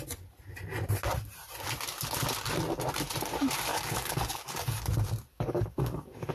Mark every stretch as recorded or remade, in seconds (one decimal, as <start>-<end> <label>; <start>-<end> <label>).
0.0-3.7 recorded; 3.7-4.8 remade; 4.8-5.3 recorded; 5.3-6.3 remade

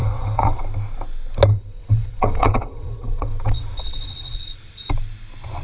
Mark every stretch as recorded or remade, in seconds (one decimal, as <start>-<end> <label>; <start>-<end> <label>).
0.0-0.6 remade; 0.6-1.5 recorded; 1.5-4.9 remade; 4.9-5.6 recorded

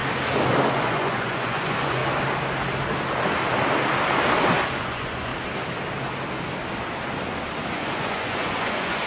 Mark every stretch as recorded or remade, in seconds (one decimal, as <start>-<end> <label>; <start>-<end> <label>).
0.0-0.7 recorded; 0.7-2.0 remade; 2.0-4.8 recorded; 4.8-5.3 remade; 5.3-7.7 recorded; 7.7-9.1 remade